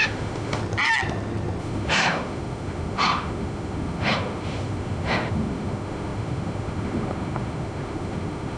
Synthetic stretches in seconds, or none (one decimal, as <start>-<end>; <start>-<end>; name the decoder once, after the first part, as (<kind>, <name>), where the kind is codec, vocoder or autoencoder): 0.0-0.6 (autoencoder, DAC-VAE); 1.6-8.6